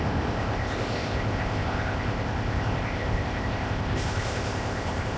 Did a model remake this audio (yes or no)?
yes